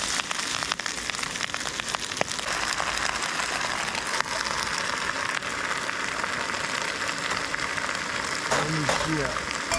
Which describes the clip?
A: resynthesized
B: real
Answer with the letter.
B